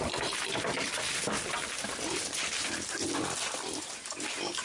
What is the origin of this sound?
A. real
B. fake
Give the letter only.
A